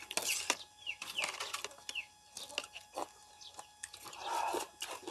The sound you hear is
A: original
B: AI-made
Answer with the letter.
A